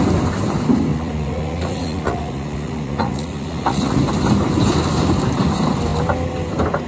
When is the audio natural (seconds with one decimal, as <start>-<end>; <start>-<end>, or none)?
0.0-0.9; 4.0-6.9